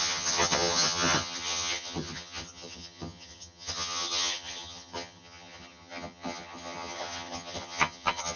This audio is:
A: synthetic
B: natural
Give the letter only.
A